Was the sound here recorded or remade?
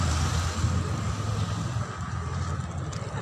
recorded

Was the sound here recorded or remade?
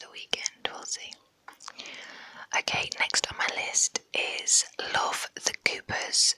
recorded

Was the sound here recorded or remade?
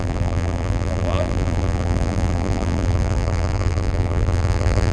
remade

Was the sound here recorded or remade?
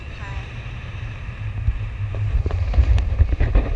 remade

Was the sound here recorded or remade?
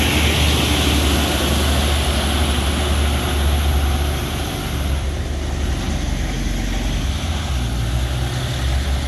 recorded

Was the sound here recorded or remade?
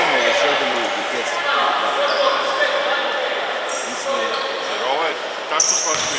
remade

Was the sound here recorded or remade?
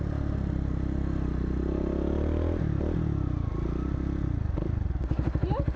recorded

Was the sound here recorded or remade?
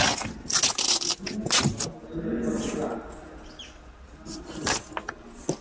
recorded